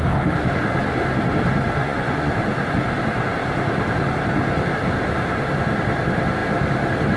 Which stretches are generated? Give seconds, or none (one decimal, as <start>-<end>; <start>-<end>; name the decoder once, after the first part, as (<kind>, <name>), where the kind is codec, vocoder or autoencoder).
1.8-2.3 (vocoder, Vocos)